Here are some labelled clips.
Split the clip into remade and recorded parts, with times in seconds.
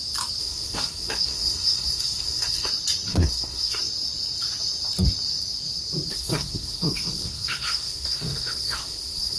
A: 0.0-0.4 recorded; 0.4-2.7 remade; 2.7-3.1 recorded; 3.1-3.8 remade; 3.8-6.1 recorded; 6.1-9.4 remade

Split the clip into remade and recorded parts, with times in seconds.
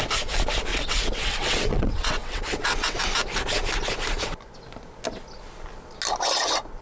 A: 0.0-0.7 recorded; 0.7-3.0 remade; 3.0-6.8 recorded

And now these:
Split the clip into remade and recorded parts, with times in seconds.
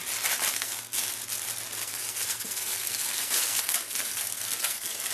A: 0.0-0.5 recorded; 0.5-1.1 remade; 1.1-1.8 recorded; 1.8-5.1 remade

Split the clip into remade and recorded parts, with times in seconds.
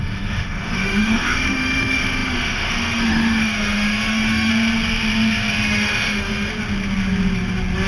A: 0.0-4.5 remade; 4.5-5.5 recorded; 5.5-6.5 remade; 6.5-7.9 recorded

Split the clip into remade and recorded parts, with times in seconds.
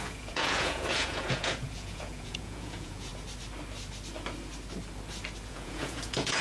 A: 0.0-3.1 remade; 3.1-5.5 recorded; 5.5-6.4 remade